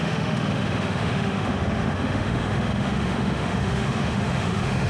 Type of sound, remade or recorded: remade